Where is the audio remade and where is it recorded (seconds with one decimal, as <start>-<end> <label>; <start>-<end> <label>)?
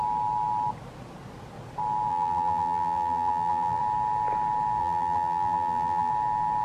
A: 0.0-2.1 recorded; 2.1-3.8 remade; 3.8-4.8 recorded; 4.8-6.1 remade; 6.1-6.6 recorded